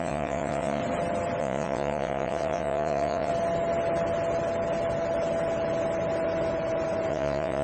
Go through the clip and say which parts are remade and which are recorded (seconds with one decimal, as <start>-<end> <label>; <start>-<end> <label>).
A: 0.0-0.8 remade; 0.8-1.4 recorded; 1.4-3.3 remade; 3.3-7.1 recorded; 7.1-7.6 remade